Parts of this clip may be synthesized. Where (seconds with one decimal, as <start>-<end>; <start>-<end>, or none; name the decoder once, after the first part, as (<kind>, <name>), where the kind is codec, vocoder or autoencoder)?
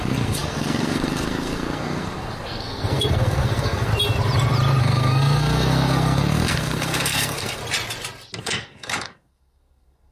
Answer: 0.0-3.9 (codec, SNAC); 4.8-7.6; 8.4-10.1